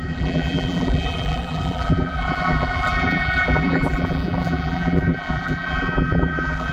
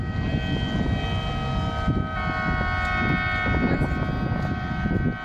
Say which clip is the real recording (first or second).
second